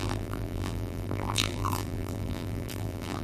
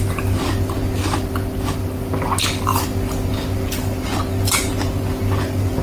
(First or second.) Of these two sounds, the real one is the second